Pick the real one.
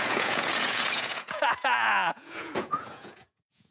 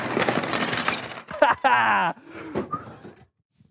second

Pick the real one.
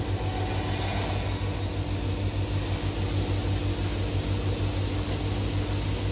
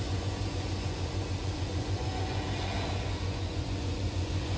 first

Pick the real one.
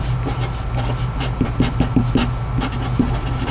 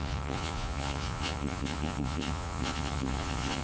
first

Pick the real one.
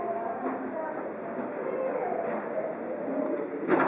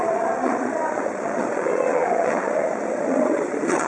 first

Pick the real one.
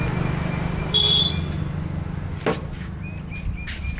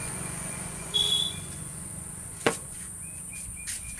first